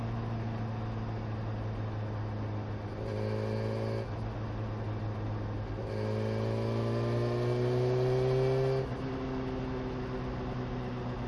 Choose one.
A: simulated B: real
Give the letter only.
B